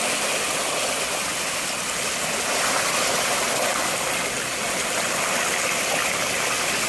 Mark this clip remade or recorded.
recorded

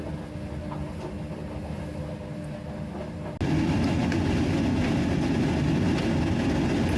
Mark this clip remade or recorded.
recorded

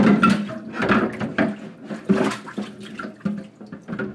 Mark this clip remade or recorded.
recorded